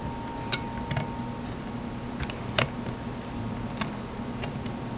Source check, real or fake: real